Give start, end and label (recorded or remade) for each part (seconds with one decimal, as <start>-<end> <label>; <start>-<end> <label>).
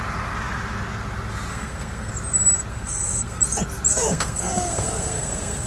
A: 0.0-1.5 recorded; 1.5-2.1 remade; 2.1-2.7 recorded; 2.7-3.4 remade; 3.4-3.9 recorded; 3.9-5.7 remade